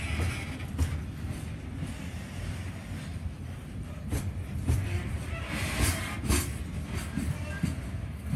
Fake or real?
real